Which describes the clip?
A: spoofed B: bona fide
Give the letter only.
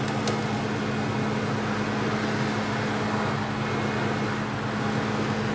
B